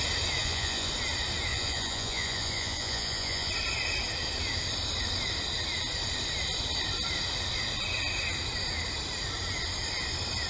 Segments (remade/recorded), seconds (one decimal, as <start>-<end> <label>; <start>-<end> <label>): 0.0-0.4 recorded; 0.4-0.9 remade; 0.9-1.5 recorded; 1.5-3.5 remade; 3.5-10.5 recorded